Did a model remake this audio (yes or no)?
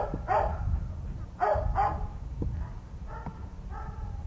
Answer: no